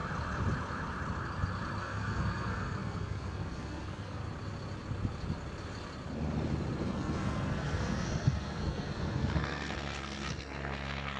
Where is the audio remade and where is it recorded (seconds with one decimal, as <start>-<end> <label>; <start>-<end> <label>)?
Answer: 0.0-1.8 recorded; 1.8-4.2 remade; 4.2-6.8 recorded; 6.8-11.2 remade